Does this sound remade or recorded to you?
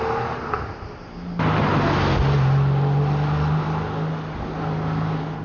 recorded